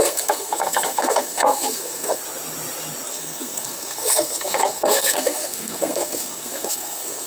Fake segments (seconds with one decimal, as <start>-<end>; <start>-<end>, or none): 0.0-2.2; 3.1-7.3